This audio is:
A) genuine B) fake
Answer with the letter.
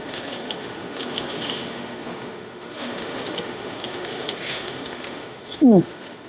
B